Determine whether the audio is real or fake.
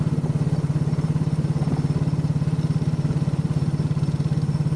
real